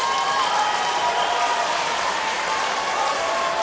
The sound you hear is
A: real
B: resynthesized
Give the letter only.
A